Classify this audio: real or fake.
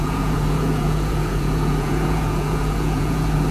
fake